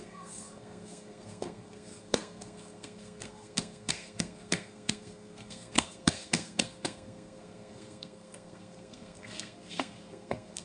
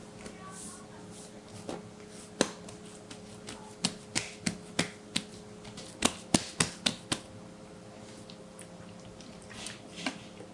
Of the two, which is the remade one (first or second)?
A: first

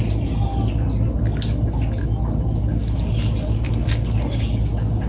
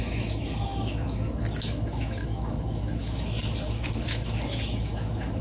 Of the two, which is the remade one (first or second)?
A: second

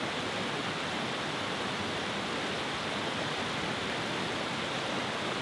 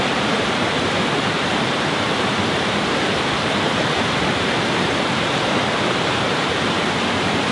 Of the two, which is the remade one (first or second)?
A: second